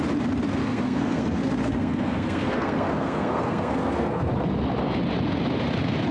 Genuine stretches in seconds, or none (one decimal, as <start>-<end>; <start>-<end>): 0.0-0.6; 4.3-6.1